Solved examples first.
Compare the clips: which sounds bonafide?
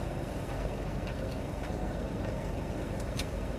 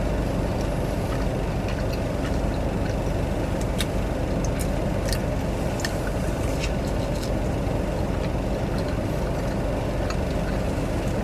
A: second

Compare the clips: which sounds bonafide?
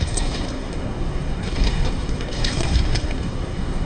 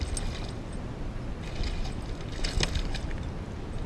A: second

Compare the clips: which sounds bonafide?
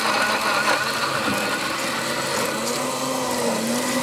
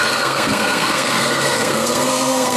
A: first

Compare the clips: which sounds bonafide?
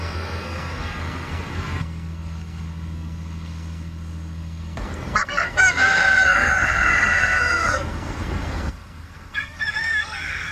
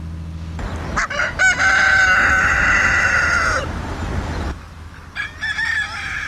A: second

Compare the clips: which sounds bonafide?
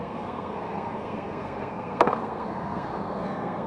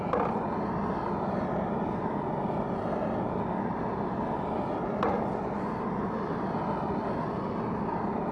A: second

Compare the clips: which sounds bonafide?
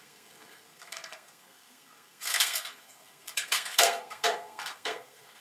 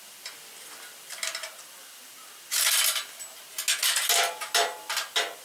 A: second